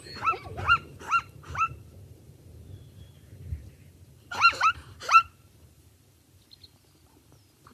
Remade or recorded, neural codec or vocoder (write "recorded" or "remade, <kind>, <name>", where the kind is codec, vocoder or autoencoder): remade, vocoder, BigVGAN v2